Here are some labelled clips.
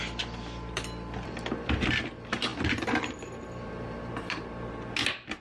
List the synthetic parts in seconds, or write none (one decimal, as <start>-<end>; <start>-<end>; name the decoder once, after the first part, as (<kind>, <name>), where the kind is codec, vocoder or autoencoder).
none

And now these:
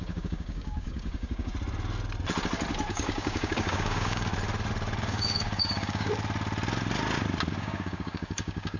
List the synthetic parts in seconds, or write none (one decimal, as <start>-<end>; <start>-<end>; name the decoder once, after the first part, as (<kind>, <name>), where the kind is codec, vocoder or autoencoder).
0.0-1.5 (codec, DAC); 2.9-4.3; 5.0-6.1; 7.6-8.8

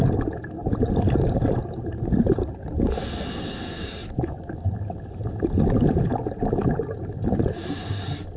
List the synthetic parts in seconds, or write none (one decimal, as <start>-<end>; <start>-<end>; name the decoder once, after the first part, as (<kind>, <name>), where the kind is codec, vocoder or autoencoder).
0.6-2.8 (vocoder, BigVGAN v2); 4.0-5.4

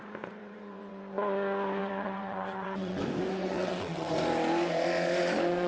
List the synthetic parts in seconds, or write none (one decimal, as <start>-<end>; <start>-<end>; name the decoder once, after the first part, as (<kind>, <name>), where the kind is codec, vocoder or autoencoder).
0.4-1.0 (vocoder, WaveNeXt); 1.8-3.0; 3.4-4.1

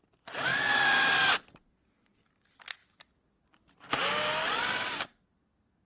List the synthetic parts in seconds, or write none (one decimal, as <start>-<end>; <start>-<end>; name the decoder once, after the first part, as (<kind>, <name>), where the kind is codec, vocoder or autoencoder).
none

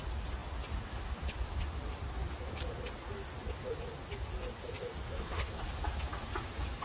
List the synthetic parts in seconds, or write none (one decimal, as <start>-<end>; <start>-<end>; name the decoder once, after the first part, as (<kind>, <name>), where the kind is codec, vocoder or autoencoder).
5.1-5.6 (codec, SNAC)

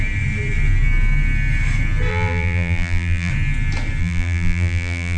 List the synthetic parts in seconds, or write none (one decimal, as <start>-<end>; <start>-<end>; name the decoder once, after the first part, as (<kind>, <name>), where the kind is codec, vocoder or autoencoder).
2.1-3.3 (vocoder, BigVGAN v2); 4.0-5.2